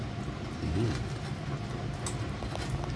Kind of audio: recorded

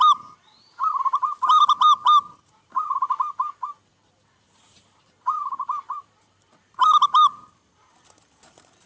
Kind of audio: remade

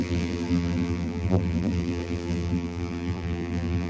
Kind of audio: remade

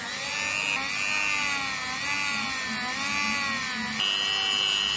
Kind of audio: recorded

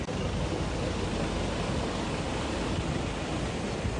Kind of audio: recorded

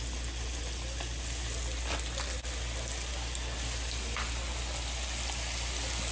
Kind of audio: recorded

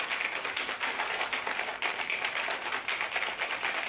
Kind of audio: recorded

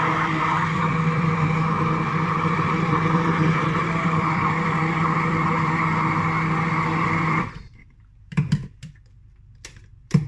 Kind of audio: remade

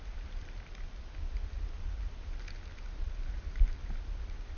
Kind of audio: recorded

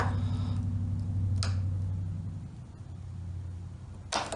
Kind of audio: recorded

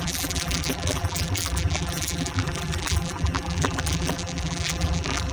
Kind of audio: remade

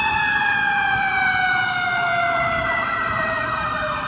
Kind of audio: remade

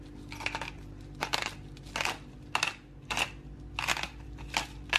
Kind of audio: recorded